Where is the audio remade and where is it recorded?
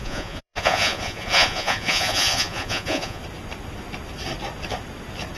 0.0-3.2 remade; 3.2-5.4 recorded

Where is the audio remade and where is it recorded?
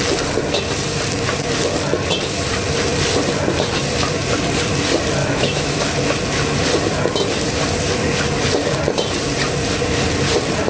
0.0-5.2 recorded; 5.2-5.8 remade; 5.8-10.7 recorded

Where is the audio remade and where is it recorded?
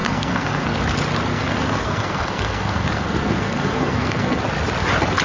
0.0-0.8 remade; 0.8-1.3 recorded; 1.3-4.4 remade; 4.4-5.2 recorded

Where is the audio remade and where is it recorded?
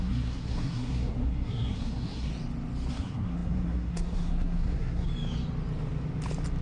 0.0-2.3 remade; 2.3-2.9 recorded; 2.9-5.1 remade; 5.1-6.6 recorded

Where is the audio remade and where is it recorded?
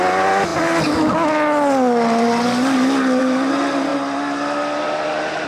0.0-5.5 recorded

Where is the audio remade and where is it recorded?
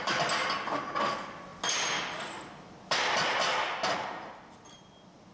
0.0-5.3 recorded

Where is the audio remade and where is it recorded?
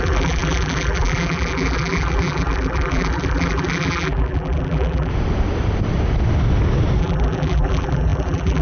0.0-5.1 remade; 5.1-7.0 recorded; 7.0-8.6 remade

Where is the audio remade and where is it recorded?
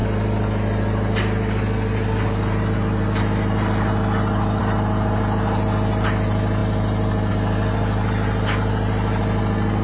0.0-9.8 recorded